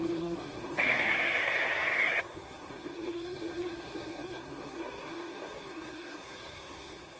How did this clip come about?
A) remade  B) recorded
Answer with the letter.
A